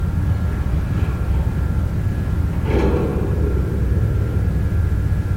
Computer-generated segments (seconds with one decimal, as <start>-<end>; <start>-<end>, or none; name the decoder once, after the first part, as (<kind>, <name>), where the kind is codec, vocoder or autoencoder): 3.1-4.6 (vocoder, BigVGAN v2)